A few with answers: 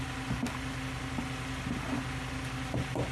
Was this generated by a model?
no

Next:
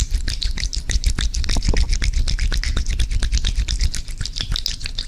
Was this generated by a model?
no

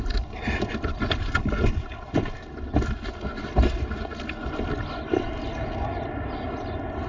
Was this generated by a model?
no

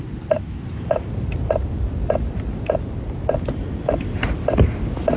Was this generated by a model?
no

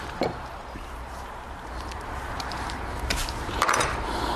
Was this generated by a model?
yes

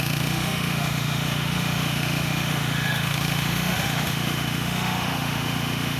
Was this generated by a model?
yes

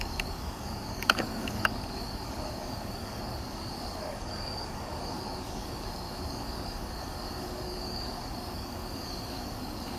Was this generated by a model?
yes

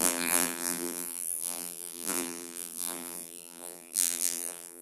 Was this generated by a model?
yes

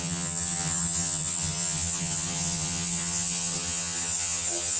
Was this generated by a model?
yes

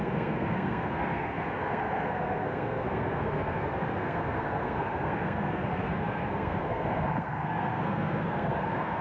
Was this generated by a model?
yes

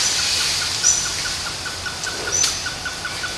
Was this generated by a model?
no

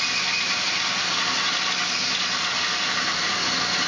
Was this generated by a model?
no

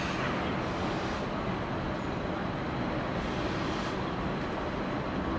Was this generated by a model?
no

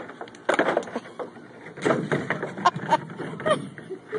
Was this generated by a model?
no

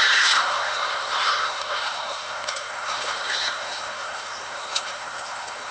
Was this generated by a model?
yes